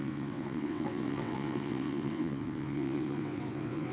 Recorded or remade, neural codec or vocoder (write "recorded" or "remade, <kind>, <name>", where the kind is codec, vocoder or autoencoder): remade, vocoder, WaveNeXt